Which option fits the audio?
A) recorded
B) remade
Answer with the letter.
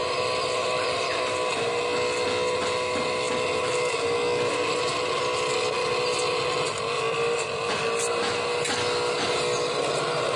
A